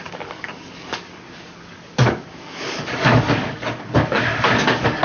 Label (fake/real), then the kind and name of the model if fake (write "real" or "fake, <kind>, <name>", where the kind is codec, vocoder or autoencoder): fake, codec, DAC